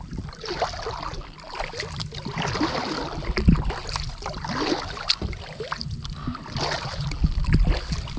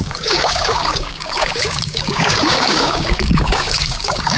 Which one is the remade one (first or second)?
second